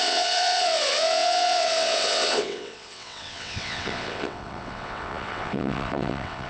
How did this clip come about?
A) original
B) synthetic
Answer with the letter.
B